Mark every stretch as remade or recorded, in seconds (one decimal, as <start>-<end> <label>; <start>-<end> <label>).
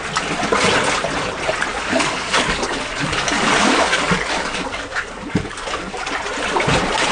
0.0-1.7 recorded; 1.7-6.0 remade; 6.0-7.1 recorded